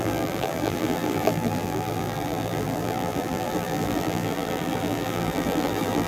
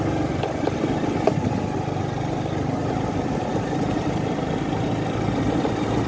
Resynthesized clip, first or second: first